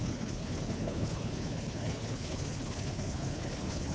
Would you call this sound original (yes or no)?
no